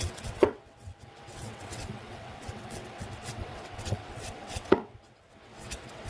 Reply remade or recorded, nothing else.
remade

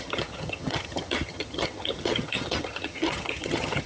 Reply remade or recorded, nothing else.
remade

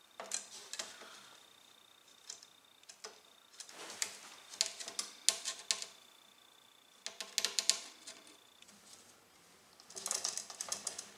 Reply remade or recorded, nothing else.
recorded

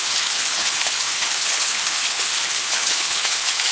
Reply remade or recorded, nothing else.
remade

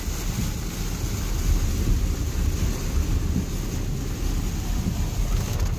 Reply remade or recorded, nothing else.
recorded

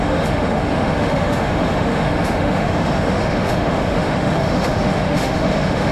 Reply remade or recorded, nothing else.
remade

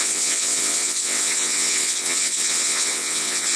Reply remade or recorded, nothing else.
remade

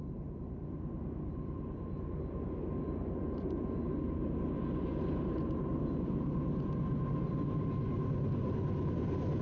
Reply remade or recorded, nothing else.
recorded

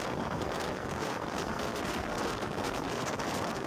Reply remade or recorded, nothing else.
remade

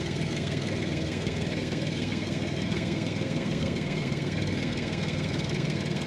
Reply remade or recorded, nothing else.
remade